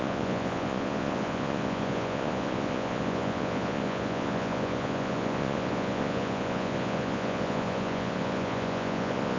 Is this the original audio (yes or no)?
no